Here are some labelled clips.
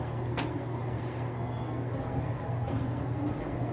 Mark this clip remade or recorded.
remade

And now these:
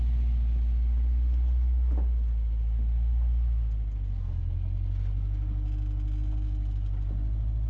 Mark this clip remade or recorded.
recorded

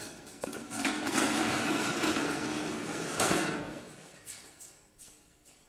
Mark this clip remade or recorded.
remade